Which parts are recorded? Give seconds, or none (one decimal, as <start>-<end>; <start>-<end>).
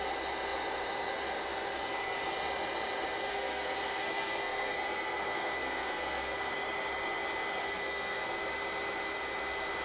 0.0-3.3; 6.5-7.6; 8.3-9.8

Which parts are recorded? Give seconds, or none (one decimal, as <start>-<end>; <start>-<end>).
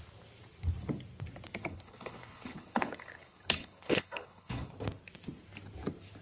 0.0-1.6; 4.8-6.2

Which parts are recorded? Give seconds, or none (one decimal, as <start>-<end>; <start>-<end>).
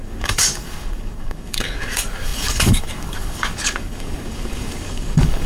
none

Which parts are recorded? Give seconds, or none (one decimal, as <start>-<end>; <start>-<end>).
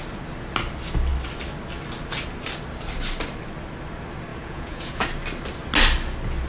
0.0-4.3; 5.1-6.5